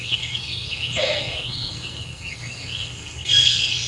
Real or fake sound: fake